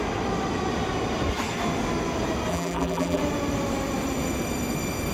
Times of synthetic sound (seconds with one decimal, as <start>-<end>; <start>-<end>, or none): 2.5-3.2